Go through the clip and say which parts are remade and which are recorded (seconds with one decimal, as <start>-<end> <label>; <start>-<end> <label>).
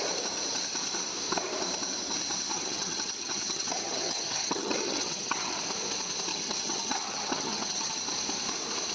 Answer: 0.0-2.5 recorded; 2.5-5.6 remade; 5.6-6.3 recorded; 6.3-8.0 remade; 8.0-8.9 recorded